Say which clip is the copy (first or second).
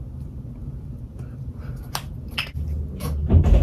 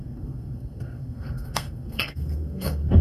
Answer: second